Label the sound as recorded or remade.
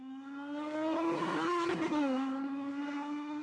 remade